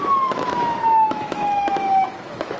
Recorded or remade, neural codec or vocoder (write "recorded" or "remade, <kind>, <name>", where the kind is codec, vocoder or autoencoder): remade, autoencoder, DAC-VAE